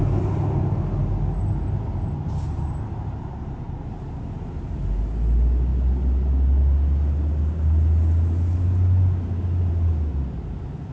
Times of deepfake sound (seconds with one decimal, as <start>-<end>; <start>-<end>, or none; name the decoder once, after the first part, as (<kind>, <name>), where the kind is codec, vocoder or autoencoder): none